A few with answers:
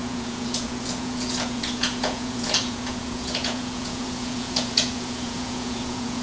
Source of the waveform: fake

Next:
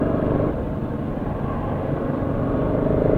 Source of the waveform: real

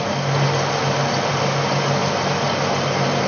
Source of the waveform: real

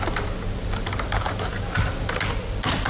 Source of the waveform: real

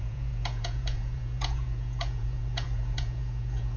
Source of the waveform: fake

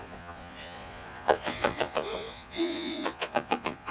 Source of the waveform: fake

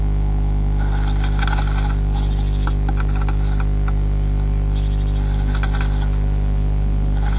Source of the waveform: real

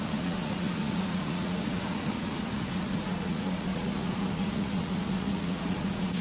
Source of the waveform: fake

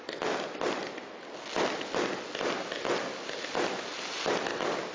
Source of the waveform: real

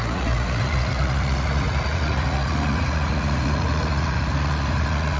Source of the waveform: fake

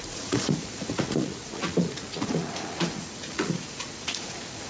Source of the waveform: fake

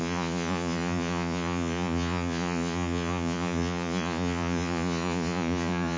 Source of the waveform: fake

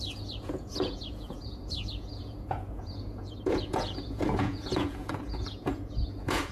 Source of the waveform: fake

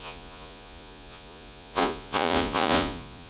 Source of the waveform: fake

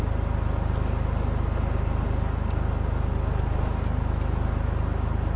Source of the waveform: real